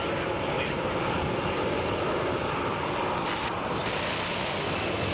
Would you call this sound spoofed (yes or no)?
no